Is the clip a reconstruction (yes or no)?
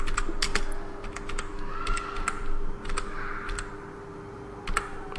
no